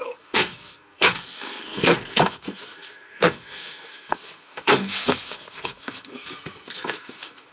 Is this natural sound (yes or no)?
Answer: no